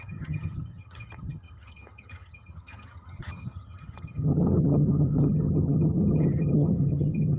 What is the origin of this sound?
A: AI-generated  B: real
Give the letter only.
A